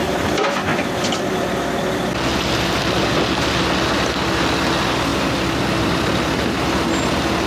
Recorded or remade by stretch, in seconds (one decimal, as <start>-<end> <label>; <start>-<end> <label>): 0.0-7.5 recorded